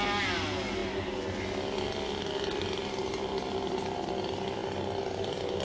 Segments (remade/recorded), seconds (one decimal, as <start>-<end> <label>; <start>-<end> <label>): 0.0-5.6 recorded